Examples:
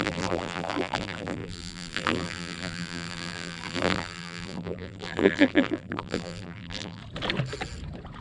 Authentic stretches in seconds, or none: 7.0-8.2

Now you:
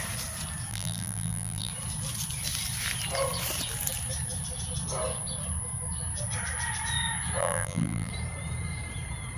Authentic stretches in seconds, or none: 0.0-0.7; 1.7-7.4; 8.1-9.4

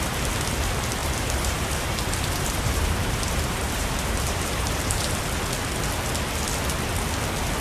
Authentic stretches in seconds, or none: 0.0-1.0; 5.3-7.6

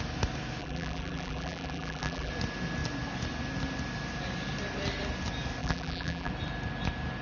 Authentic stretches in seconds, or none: 0.0-0.6; 2.3-5.6; 6.3-7.2

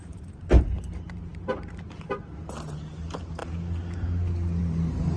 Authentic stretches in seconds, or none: 3.4-4.6

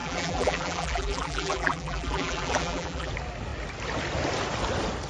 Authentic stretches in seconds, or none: 3.1-5.1

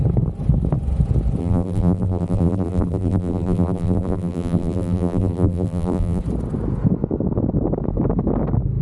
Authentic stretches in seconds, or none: 0.0-1.4; 6.2-8.8

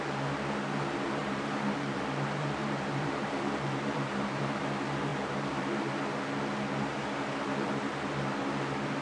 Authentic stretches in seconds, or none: 0.0-1.2; 4.6-5.1; 5.8-9.0